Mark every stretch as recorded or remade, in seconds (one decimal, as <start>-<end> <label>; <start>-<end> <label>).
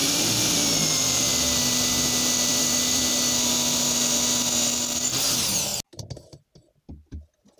0.0-0.7 remade; 0.7-2.5 recorded; 2.5-3.0 remade; 3.0-7.6 recorded